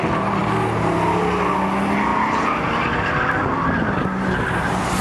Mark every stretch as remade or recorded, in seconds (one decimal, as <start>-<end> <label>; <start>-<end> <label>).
0.0-5.0 recorded